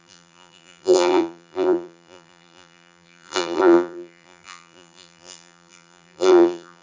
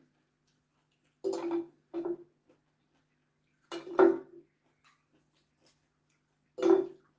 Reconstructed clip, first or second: first